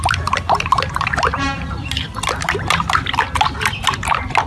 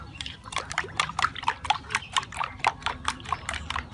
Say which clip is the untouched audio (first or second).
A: first